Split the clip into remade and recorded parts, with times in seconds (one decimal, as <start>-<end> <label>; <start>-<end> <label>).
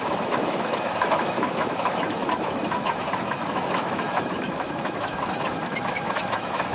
0.0-6.7 remade